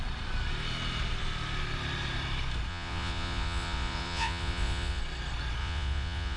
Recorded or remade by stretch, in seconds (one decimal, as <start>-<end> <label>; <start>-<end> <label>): 0.0-2.7 recorded; 2.7-5.0 remade; 5.0-5.6 recorded; 5.6-6.4 remade